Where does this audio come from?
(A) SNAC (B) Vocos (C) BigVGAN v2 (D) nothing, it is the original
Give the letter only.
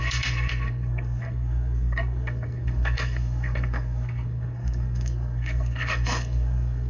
A